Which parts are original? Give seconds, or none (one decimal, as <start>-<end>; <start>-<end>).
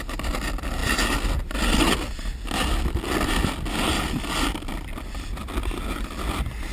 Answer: 0.0-6.7